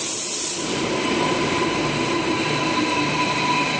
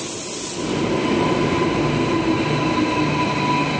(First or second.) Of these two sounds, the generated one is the first